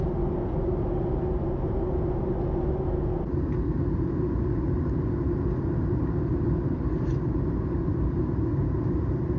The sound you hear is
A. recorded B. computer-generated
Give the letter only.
A